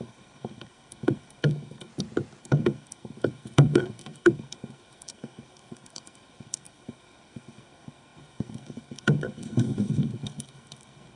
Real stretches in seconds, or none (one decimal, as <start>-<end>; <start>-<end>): 1.9-2.4